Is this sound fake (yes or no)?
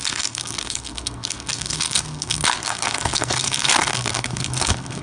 yes